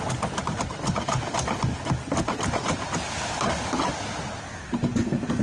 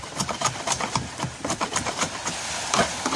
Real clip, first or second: first